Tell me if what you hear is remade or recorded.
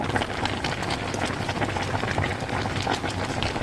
recorded